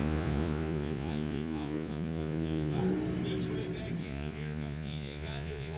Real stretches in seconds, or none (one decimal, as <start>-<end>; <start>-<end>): 2.8-4.0